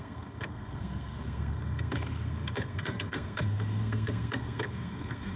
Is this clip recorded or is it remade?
remade